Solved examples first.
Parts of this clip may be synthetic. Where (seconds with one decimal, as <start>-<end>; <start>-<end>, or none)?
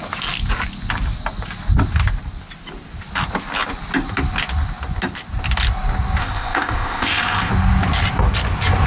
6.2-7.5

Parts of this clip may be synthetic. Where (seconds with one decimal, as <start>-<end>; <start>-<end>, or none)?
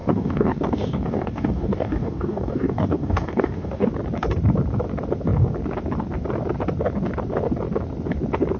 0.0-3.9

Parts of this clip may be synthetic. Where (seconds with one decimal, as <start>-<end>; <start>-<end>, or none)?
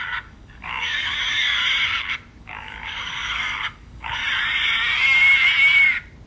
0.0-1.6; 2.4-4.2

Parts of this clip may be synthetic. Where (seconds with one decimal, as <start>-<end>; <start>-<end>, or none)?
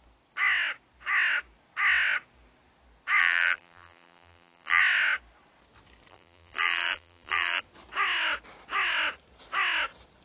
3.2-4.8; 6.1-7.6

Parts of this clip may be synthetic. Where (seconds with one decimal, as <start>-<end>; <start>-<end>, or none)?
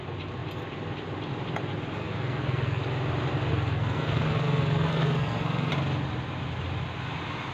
2.0-2.8; 3.5-5.7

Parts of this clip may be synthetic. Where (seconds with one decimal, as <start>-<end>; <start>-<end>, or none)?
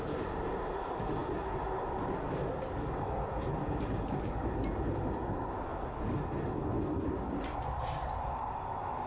none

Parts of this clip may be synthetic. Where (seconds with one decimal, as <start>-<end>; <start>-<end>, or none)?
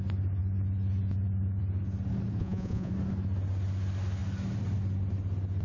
2.4-2.9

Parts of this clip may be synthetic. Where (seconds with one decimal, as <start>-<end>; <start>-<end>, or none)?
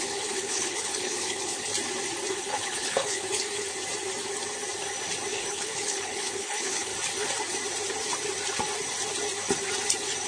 0.0-1.7; 2.3-3.7; 5.3-6.9